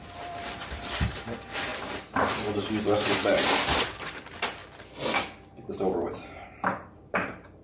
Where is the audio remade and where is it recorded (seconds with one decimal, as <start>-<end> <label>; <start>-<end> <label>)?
0.0-4.6 remade; 4.6-5.7 recorded; 5.7-7.6 remade